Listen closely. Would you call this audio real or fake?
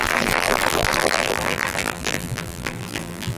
fake